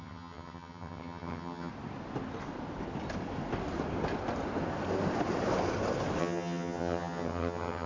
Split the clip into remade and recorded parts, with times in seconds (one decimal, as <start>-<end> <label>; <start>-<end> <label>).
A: 0.0-1.7 remade; 1.7-6.2 recorded; 6.2-7.9 remade